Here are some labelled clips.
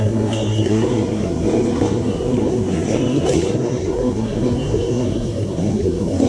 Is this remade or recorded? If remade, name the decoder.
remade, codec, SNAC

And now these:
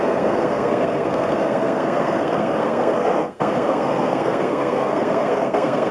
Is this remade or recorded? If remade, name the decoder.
remade, codec, SNAC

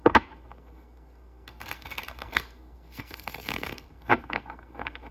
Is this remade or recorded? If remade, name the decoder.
remade, codec, SNAC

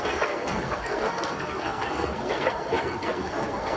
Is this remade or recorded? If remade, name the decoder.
remade, codec, SNAC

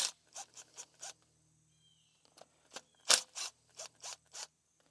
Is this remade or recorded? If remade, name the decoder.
recorded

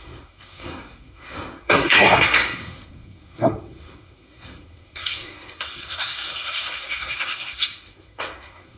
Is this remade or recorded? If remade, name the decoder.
remade, codec, SNAC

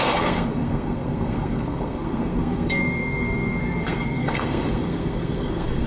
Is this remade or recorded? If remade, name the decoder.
remade, codec, SNAC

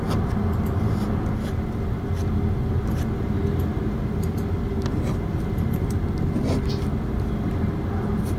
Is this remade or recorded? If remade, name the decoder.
recorded